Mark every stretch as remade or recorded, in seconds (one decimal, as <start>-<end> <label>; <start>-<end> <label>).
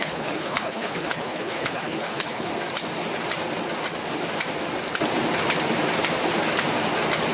0.0-2.5 remade; 2.5-7.3 recorded